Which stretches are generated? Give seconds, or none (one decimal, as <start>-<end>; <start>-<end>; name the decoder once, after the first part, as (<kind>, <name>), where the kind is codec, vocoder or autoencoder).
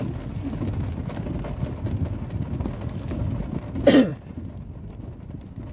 none